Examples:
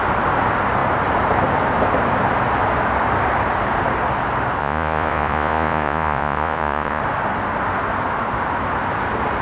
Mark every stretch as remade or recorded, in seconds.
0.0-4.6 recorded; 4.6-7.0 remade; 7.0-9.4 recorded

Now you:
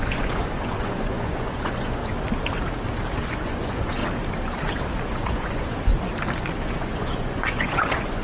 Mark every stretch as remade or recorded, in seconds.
0.0-2.0 remade; 2.0-3.2 recorded; 3.2-4.0 remade; 4.0-5.0 recorded; 5.0-5.9 remade; 5.9-6.6 recorded; 6.6-8.2 remade

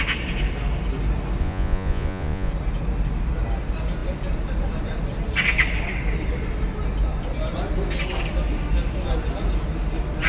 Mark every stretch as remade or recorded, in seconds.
0.0-1.4 recorded; 1.4-2.5 remade; 2.5-10.3 recorded

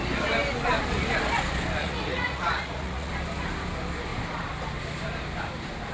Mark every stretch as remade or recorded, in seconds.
0.0-1.8 recorded; 1.8-3.1 remade; 3.1-5.9 recorded

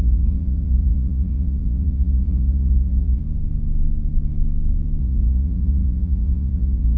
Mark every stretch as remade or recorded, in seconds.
0.0-3.2 remade; 3.2-5.0 recorded; 5.0-7.0 remade

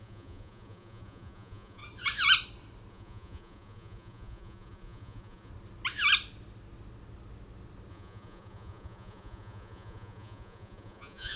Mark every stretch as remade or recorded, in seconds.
0.0-1.8 remade; 1.8-2.9 recorded; 2.9-5.5 remade; 5.5-7.9 recorded; 7.9-11.4 remade

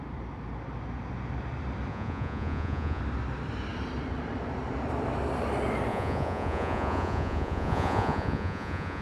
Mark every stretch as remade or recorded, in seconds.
0.0-1.9 recorded; 1.9-3.0 remade; 3.0-5.9 recorded; 5.9-9.0 remade